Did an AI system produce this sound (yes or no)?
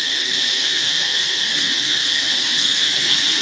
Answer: yes